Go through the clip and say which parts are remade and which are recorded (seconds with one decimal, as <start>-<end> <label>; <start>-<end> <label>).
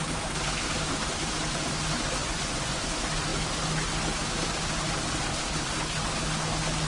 0.0-2.2 recorded; 2.2-2.8 remade; 2.8-6.9 recorded